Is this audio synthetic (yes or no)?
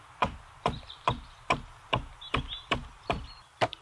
no